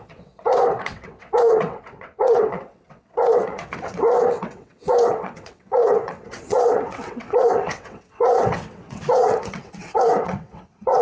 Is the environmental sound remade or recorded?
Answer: remade